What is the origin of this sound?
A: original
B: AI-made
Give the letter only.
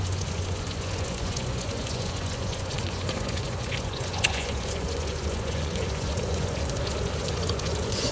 B